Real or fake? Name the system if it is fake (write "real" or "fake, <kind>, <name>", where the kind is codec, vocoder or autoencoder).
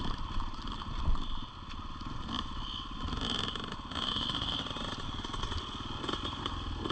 real